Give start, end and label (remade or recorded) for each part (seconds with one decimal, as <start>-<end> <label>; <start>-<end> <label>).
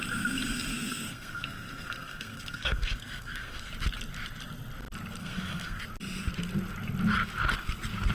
0.0-0.7 recorded; 0.7-3.7 remade; 3.7-5.2 recorded; 5.2-5.8 remade; 5.8-8.1 recorded